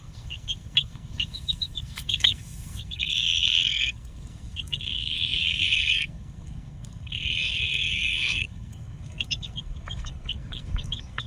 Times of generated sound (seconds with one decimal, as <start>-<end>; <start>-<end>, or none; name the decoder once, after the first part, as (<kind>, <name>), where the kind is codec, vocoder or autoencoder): 0.0-11.3 (codec, SNAC)